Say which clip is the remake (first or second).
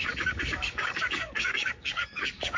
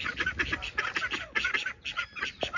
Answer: first